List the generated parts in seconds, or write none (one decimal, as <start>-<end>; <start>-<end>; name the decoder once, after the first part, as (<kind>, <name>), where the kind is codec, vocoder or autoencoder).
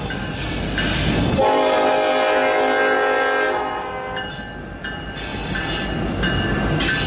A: none